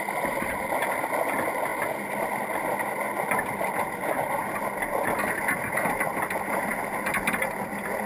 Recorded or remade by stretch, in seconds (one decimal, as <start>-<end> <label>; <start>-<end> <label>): 0.0-8.1 recorded

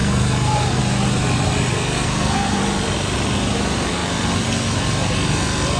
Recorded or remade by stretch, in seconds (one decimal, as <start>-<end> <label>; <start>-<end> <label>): 0.0-0.8 remade; 0.8-1.7 recorded; 1.7-2.6 remade; 2.6-5.8 recorded

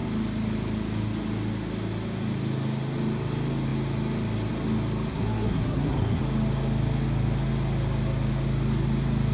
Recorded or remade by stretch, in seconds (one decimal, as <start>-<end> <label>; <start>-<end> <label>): 0.0-5.1 recorded; 5.1-6.2 remade; 6.2-9.3 recorded

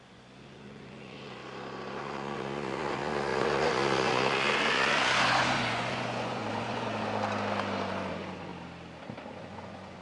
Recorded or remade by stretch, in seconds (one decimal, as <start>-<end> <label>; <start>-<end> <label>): 0.0-1.4 remade; 1.4-2.0 recorded; 2.0-6.9 remade; 6.9-8.1 recorded; 8.1-8.5 remade; 8.5-9.4 recorded; 9.4-10.0 remade

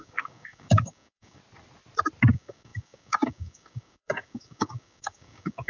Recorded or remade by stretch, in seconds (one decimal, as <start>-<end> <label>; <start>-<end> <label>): 0.0-1.4 remade; 1.4-2.3 recorded; 2.3-5.7 remade

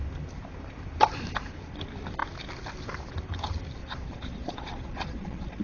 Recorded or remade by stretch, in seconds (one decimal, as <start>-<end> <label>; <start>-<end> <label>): 0.0-3.8 recorded; 3.8-5.6 remade

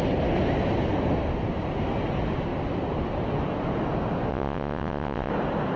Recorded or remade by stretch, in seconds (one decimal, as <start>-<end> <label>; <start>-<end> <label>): 0.0-4.3 recorded; 4.3-5.3 remade; 5.3-5.8 recorded